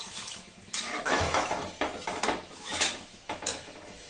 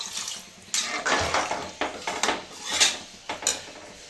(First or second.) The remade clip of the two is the first